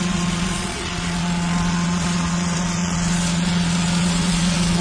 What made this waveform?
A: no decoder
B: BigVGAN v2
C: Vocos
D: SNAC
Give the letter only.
C